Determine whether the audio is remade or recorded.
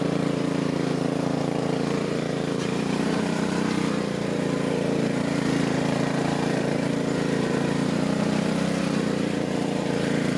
remade